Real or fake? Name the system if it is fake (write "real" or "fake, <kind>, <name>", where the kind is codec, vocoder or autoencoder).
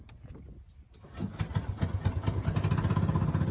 real